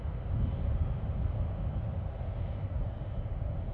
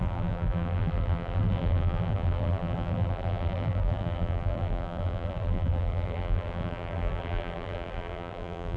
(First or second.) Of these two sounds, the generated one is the second